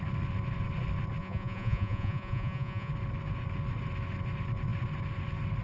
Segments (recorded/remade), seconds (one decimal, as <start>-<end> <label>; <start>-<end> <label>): 0.0-1.2 recorded; 1.2-2.9 remade; 2.9-5.6 recorded